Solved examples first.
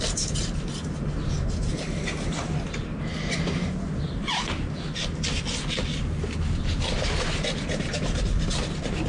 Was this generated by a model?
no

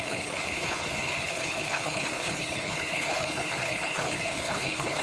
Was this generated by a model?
yes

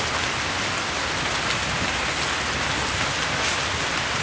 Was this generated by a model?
no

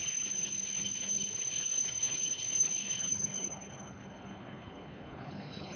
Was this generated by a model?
yes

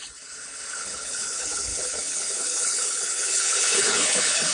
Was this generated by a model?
yes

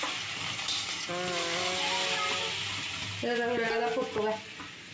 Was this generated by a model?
no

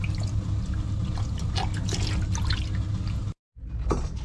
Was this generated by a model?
no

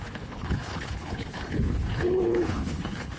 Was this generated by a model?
yes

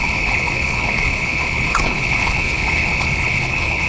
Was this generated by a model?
yes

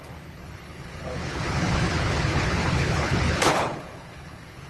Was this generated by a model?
yes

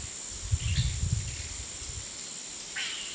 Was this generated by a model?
no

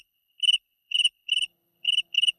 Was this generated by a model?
yes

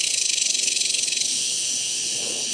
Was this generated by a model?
yes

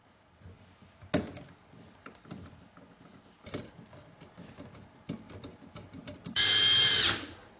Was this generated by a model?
no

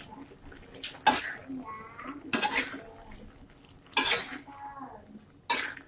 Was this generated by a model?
no